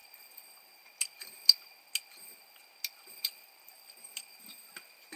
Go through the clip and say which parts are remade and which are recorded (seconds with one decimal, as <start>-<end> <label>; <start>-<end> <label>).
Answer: 0.0-3.1 recorded; 3.1-5.2 remade